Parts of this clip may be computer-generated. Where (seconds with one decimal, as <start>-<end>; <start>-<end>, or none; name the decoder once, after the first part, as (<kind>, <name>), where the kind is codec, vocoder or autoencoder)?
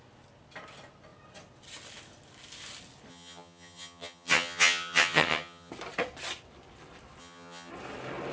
3.1-5.7 (vocoder, HiFi-GAN); 7.2-7.7